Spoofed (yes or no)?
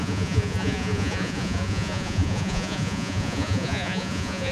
yes